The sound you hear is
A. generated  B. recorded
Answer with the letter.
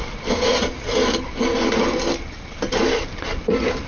A